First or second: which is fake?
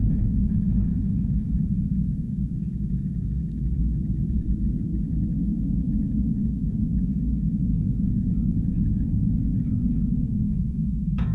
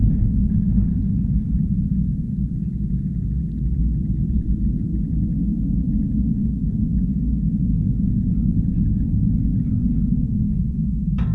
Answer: first